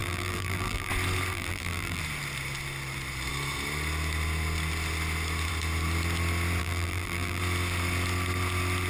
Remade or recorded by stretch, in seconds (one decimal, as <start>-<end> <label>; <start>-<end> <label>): 0.0-0.9 remade; 0.9-1.3 recorded; 1.3-2.0 remade; 2.0-6.6 recorded; 6.6-7.4 remade; 7.4-8.9 recorded